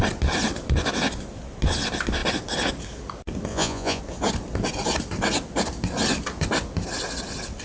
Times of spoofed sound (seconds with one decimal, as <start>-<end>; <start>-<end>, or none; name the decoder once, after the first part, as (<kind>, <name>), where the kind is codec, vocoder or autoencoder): 3.5-4.0 (vocoder, Vocos)